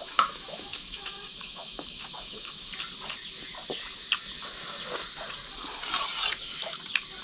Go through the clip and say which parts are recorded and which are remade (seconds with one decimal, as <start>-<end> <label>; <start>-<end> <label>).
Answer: 0.0-2.7 remade; 2.7-7.2 recorded